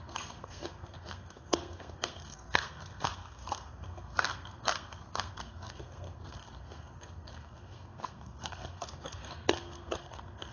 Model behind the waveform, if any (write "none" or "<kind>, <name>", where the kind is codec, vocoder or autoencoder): codec, SNAC